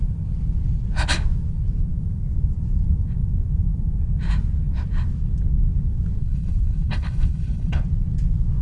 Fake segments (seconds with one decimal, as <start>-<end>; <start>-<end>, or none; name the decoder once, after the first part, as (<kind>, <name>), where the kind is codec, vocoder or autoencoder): 6.2-7.8 (codec, HILCodec)